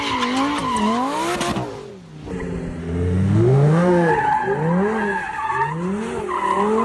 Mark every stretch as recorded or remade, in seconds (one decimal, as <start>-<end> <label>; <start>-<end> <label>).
0.0-2.8 recorded; 2.8-4.1 remade; 4.1-6.8 recorded

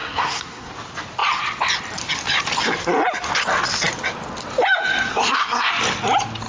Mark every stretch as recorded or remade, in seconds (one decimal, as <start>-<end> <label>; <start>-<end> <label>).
0.0-0.7 remade; 0.7-5.1 recorded; 5.1-5.7 remade; 5.7-6.5 recorded